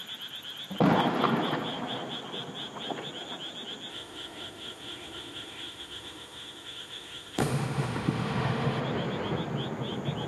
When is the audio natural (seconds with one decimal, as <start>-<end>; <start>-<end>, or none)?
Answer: 0.0-3.9; 8.8-10.3